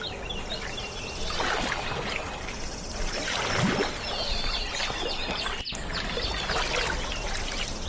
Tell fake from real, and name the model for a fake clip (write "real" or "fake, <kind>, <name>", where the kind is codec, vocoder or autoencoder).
real